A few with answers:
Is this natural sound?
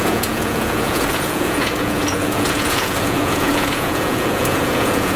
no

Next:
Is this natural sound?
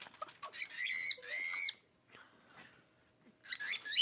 yes